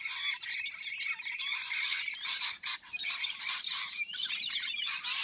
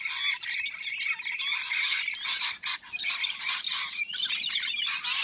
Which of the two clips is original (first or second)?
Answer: second